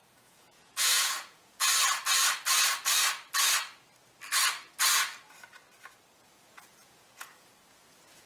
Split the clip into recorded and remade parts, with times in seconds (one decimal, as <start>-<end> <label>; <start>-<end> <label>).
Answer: 0.0-1.7 remade; 1.7-6.2 recorded; 6.2-8.3 remade